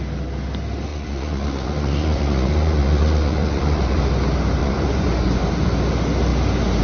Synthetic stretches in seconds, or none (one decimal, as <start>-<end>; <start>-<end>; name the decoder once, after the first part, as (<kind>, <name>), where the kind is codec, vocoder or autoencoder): 0.9-4.0 (vocoder, Vocos); 4.6-5.4